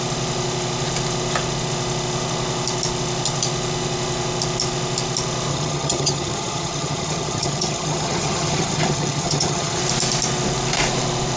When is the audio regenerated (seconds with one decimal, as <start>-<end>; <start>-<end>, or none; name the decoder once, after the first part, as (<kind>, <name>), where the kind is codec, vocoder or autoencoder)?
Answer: 5.5-9.8 (vocoder, HiFi-GAN)